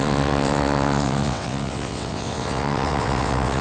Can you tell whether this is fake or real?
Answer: fake